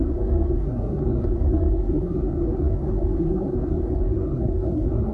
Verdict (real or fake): fake